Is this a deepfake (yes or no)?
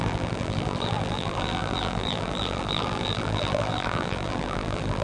yes